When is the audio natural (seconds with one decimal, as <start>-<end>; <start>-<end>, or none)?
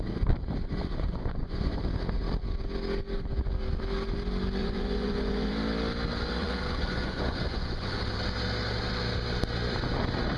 0.0-0.7; 1.8-4.6; 5.5-6.4; 8.0-10.4